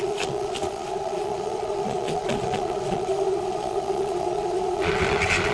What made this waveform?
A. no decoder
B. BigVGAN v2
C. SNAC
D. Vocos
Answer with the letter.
D